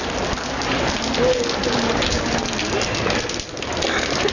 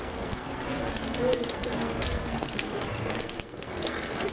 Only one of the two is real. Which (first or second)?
first